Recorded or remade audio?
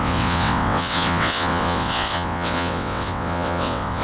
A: remade